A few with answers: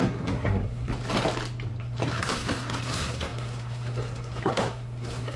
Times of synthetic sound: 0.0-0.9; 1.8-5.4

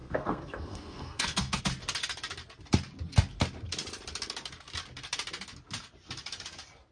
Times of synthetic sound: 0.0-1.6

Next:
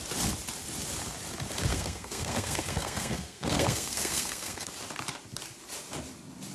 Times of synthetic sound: 1.7-4.7

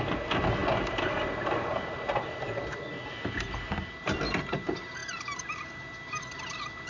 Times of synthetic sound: none